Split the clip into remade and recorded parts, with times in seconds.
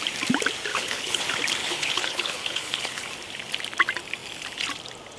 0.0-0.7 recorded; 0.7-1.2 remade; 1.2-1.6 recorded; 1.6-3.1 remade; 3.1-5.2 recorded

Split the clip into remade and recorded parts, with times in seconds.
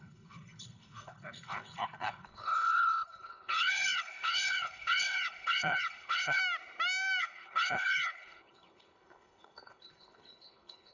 0.0-6.4 remade; 6.4-7.2 recorded; 7.2-10.9 remade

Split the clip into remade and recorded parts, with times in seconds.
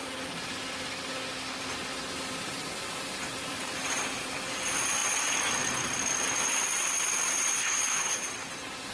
0.0-7.6 recorded; 7.6-8.2 remade; 8.2-8.9 recorded